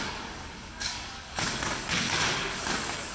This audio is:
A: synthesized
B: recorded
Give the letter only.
A